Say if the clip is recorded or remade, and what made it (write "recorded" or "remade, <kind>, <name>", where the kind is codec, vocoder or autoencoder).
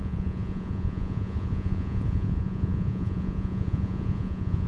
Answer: remade, vocoder, Vocos